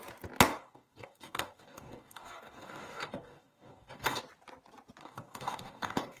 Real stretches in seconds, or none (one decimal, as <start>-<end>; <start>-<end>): 0.0-0.5; 4.2-5.0